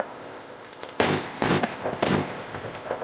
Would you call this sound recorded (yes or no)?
no